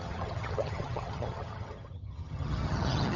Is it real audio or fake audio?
fake